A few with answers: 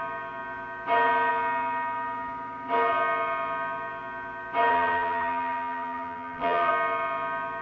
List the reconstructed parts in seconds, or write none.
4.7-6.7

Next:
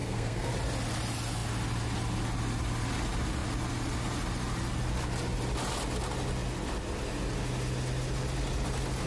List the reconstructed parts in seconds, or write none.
0.0-0.5

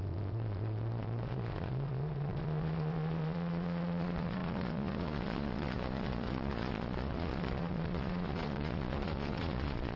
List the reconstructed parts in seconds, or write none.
0.0-10.0

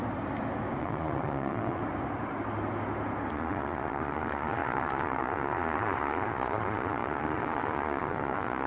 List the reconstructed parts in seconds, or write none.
0.8-1.8; 3.3-8.7

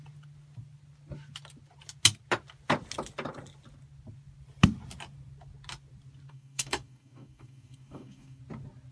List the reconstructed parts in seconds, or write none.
6.3-8.4

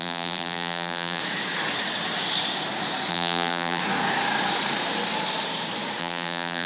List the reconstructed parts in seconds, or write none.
0.0-1.2; 3.1-3.8; 6.0-6.7

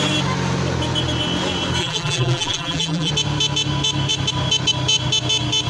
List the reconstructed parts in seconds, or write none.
1.8-3.1